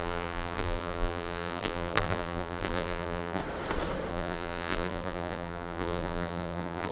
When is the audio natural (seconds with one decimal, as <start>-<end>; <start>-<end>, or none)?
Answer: 3.4-4.1